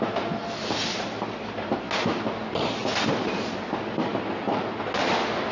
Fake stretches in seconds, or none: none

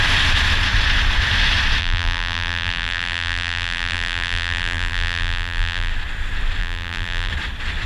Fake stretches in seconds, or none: 1.8-5.9; 6.6-7.3

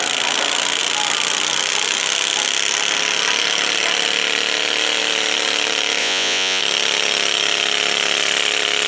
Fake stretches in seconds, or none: 6.0-6.6

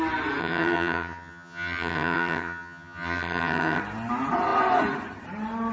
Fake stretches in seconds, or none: 0.4-3.8

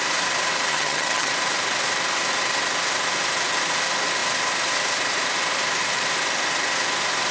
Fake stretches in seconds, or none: 0.7-1.3

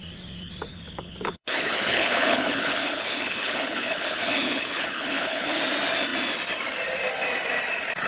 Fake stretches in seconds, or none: 0.7-5.6